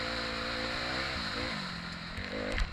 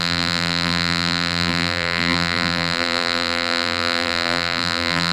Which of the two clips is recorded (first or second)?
first